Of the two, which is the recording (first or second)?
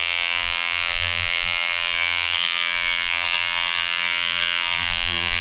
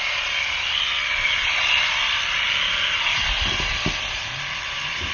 second